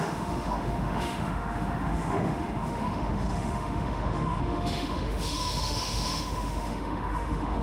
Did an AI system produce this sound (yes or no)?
yes